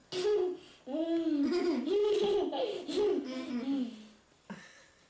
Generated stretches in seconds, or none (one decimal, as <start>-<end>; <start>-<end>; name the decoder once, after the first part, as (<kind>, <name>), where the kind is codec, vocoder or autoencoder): none